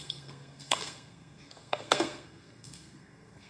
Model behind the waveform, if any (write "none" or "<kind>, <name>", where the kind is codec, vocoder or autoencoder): codec, SNAC